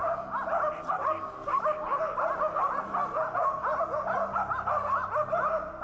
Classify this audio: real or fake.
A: real